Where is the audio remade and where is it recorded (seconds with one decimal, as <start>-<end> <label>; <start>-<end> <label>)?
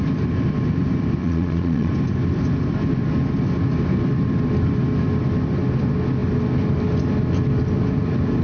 0.0-1.2 recorded; 1.2-1.9 remade; 1.9-8.4 recorded